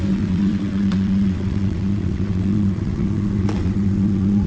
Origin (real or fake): fake